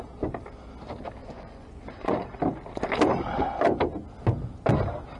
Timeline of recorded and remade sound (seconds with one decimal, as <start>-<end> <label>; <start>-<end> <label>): 0.0-1.2 recorded; 1.2-2.4 remade; 2.4-5.2 recorded